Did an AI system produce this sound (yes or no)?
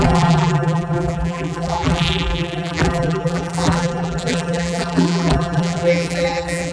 yes